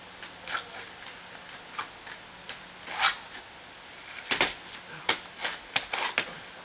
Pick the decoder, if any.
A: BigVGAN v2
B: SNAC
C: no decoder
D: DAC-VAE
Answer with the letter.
C